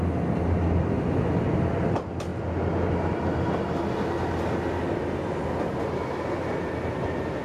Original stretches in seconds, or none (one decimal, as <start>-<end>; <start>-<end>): 0.0-7.4